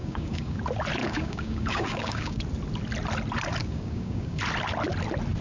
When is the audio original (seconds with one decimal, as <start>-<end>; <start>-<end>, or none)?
0.6-1.0; 2.4-3.6; 4.4-5.4